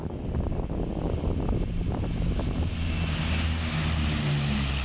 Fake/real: real